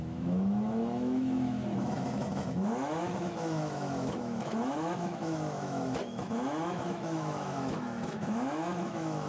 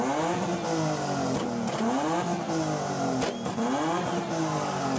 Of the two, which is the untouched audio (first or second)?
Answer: second